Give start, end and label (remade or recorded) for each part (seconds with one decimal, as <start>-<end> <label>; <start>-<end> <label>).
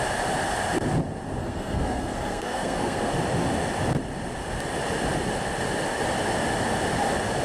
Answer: 0.0-1.4 recorded; 1.4-3.1 remade; 3.1-7.4 recorded